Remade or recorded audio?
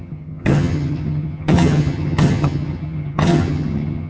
remade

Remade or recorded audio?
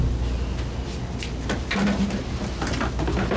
recorded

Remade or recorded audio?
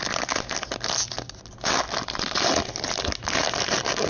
recorded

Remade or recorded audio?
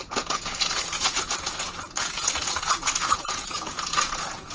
remade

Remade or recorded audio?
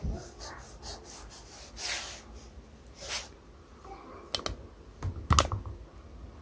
recorded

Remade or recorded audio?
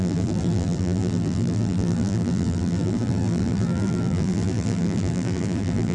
remade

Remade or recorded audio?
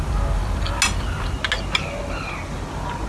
recorded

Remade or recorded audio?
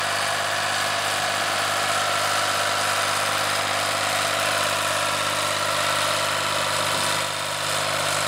recorded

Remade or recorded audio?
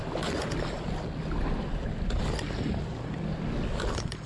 recorded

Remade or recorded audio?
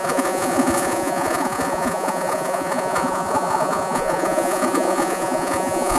remade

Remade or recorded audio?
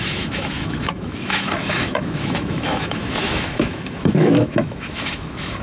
remade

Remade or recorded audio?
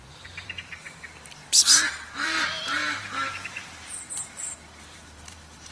remade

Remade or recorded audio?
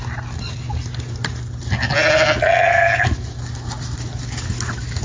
recorded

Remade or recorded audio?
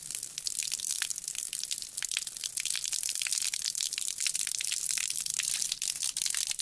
recorded